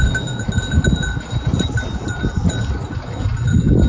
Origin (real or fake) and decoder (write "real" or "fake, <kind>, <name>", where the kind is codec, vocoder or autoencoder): real